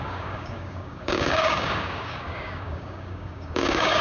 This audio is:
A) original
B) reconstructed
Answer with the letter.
B